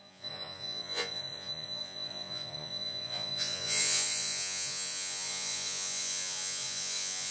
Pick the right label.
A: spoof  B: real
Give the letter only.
A